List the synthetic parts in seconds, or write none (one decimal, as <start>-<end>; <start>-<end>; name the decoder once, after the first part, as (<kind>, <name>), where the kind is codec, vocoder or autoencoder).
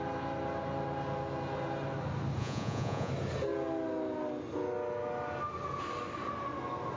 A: 2.4-3.1 (vocoder, Vocos)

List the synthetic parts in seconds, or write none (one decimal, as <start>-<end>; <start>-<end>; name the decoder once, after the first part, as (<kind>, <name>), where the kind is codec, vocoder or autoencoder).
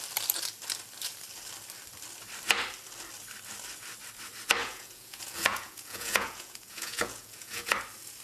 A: 4.6-7.7 (vocoder, Vocos)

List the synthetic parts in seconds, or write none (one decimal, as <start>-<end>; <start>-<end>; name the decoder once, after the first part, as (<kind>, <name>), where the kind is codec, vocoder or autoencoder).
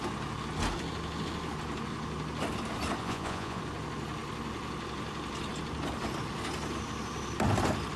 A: 3.0-3.6 (vocoder, Vocos)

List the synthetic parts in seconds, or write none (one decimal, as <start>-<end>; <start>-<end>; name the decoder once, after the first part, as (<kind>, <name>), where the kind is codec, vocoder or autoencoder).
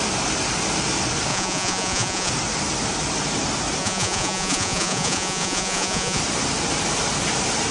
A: 1.3-2.3 (vocoder, Vocos); 3.8-6.2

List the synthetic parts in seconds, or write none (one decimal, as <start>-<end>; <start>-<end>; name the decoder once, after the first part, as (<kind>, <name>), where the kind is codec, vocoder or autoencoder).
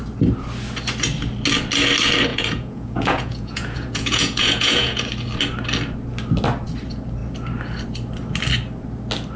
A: 2.3-5.0 (vocoder, Vocos)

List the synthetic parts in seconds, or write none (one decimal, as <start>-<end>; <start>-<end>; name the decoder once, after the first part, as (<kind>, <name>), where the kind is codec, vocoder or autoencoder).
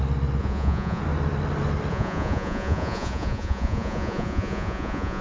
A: 0.4-1.0 (vocoder, Vocos); 1.9-5.2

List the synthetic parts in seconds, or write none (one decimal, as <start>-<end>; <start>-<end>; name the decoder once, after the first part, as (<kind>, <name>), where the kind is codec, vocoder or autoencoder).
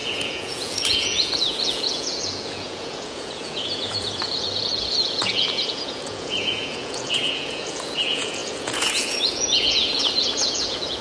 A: 0.0-11.0 (vocoder, Vocos)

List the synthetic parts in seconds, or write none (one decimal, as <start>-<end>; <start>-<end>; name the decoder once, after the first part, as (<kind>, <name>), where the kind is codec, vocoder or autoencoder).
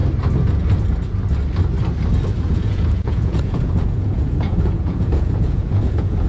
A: 2.4-6.3 (vocoder, Vocos)